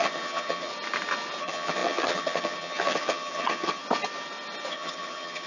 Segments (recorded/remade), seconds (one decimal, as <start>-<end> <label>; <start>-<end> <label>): 0.0-0.7 remade; 0.7-1.4 recorded; 1.4-3.8 remade; 3.8-4.7 recorded; 4.7-5.5 remade